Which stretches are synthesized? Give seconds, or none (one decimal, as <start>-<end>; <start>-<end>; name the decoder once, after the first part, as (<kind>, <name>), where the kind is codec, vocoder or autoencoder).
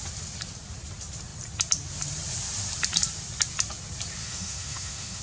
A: 4.2-5.2 (autoencoder, DAC-VAE)